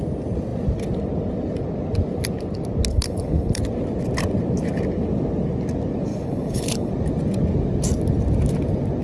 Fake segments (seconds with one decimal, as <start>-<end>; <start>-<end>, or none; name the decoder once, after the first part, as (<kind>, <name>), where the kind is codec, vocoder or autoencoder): 2.9-3.6 (codec, HILCodec); 6.1-6.9